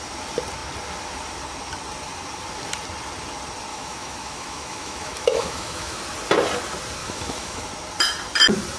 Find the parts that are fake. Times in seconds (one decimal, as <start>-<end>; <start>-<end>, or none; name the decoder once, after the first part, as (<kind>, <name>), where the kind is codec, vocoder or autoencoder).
3.7-6.0 (autoencoder, DAC-VAE); 7.0-7.7